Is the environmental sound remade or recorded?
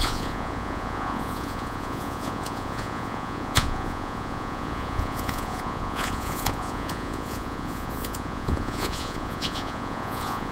remade